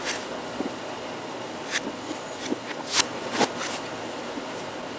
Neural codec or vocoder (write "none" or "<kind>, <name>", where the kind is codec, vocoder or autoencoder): none